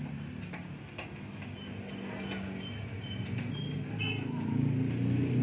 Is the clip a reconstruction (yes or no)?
no